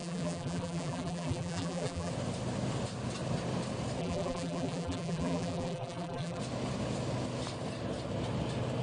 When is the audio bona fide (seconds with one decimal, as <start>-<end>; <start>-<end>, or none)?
2.1-4.0; 6.4-8.8